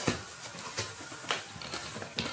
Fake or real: real